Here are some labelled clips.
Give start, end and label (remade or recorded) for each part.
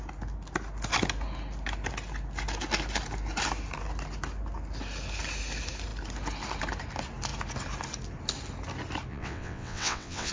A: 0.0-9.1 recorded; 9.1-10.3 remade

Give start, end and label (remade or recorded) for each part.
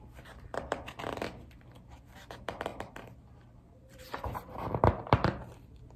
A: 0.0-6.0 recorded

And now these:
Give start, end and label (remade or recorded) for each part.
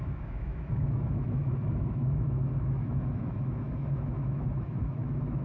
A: 0.0-5.4 remade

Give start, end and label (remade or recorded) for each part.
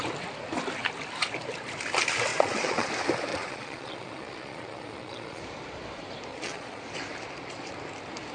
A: 0.0-2.3 recorded; 2.3-2.9 remade; 2.9-3.3 recorded; 3.3-5.4 remade; 5.4-6.3 recorded; 6.3-6.8 remade; 6.8-8.3 recorded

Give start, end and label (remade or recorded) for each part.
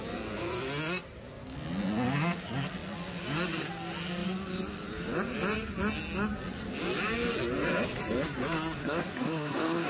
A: 0.0-8.8 recorded; 8.8-9.9 remade